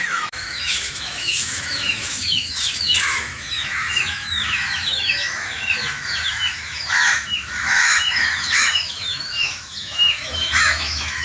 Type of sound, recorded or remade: remade